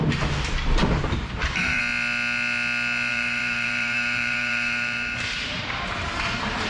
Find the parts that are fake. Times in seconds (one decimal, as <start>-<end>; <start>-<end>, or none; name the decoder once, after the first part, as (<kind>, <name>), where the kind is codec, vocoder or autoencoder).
0.8-1.8 (vocoder, BigVGAN v2); 3.1-6.7